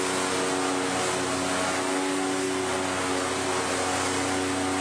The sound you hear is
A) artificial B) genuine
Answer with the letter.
B